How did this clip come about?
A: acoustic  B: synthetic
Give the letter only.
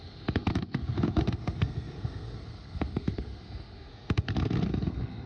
B